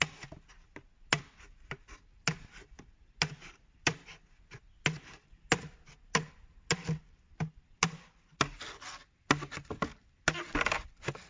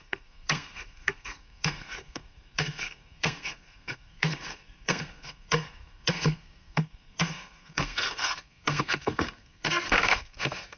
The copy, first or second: second